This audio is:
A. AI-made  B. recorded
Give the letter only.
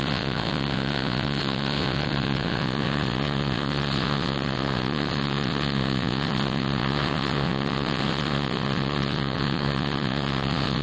A